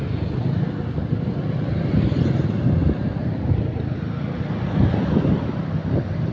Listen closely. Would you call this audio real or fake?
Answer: real